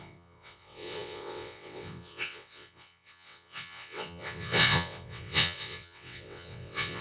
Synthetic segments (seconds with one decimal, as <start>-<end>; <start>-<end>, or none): 0.0-7.0

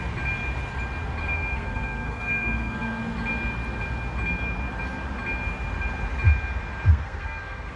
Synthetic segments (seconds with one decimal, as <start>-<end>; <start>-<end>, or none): 1.2-3.0; 6.9-7.8

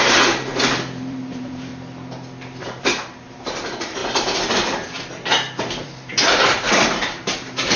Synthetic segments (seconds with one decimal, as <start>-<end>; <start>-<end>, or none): 0.0-1.7; 2.6-4.0; 5.6-7.8

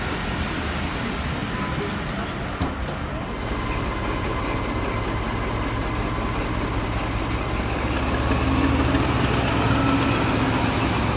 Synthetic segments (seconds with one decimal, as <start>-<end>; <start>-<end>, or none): none

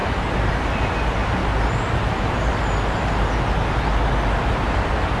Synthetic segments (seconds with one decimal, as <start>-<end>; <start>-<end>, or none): 0.5-1.4; 4.5-5.2

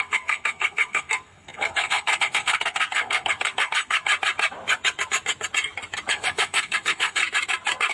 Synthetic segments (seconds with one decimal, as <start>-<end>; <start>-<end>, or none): 0.0-4.1; 6.1-7.2

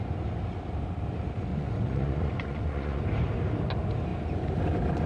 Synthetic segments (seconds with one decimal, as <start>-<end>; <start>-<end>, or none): 1.5-3.0

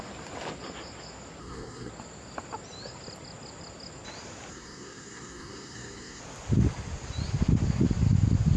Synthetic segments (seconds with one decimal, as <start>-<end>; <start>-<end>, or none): 1.4-1.9; 4.5-6.2